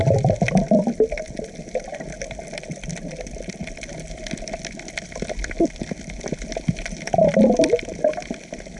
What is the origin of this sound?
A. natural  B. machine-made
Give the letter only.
A